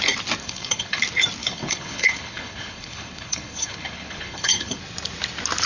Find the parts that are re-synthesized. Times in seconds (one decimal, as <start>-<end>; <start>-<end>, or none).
0.4-1.0; 1.4-4.8